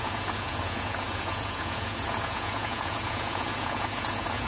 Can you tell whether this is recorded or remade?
remade